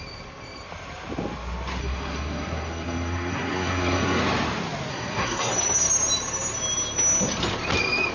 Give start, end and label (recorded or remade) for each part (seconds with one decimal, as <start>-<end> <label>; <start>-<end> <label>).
0.0-1.8 recorded; 1.8-4.2 remade; 4.2-4.9 recorded; 4.9-5.5 remade; 5.5-8.1 recorded